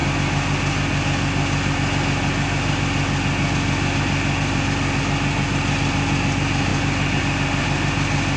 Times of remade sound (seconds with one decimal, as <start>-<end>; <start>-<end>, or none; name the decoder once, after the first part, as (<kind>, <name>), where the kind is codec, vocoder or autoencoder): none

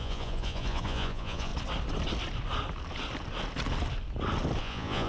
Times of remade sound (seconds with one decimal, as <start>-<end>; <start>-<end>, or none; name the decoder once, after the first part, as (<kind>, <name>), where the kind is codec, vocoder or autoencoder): 0.0-1.5 (vocoder, Vocos); 4.6-5.1

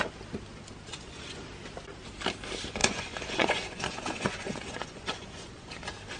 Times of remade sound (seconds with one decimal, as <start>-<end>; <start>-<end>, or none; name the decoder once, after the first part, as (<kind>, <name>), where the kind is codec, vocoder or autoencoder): 0.9-1.4 (vocoder, Vocos); 2.8-5.7

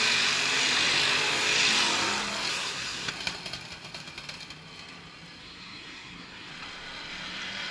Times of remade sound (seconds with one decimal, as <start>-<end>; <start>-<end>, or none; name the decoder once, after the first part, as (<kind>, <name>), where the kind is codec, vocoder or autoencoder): 2.5-3.1 (codec, SNAC); 5.4-6.5

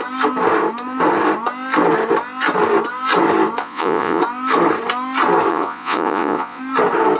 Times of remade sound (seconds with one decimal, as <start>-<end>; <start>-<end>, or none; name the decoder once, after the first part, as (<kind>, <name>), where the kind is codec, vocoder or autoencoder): 3.6-4.2 (vocoder, Vocos); 5.5-6.6

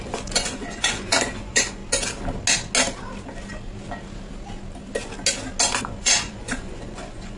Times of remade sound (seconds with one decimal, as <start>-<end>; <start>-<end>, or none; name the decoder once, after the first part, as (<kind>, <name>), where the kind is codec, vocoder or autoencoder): 0.0-1.8 (vocoder, Vocos); 5.8-7.4

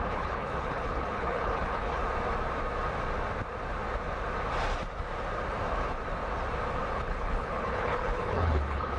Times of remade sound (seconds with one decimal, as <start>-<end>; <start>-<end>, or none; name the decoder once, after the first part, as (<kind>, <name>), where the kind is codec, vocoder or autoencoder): 0.0-2.0 (codec, HILCodec); 6.9-9.0

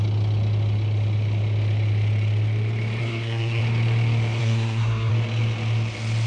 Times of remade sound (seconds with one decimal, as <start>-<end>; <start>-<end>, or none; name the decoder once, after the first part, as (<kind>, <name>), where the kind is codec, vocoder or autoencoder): 3.0-3.6 (codec, SNAC); 4.4-5.1